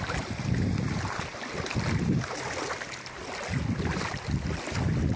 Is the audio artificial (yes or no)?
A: no